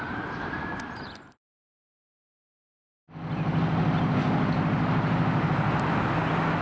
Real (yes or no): yes